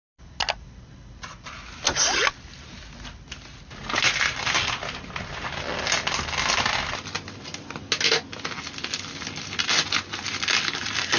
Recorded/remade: recorded